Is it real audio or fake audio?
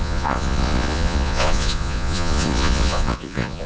fake